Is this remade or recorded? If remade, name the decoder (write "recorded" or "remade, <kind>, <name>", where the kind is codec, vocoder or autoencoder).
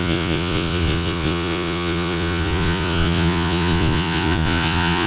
remade, vocoder, Vocos